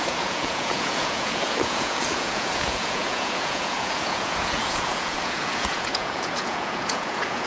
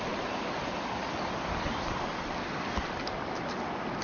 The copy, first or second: first